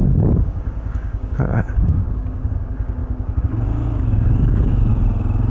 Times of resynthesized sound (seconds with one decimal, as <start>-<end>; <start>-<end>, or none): 0.0-4.9